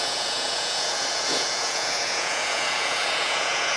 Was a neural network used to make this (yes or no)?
yes